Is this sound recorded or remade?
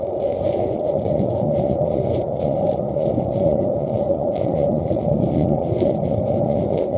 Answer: remade